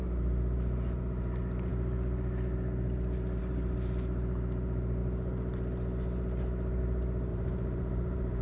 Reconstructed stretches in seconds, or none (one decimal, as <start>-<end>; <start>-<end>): 7.3-8.4